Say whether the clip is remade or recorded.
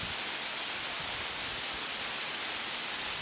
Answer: recorded